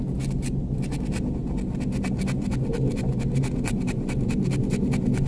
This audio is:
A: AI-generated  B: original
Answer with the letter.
B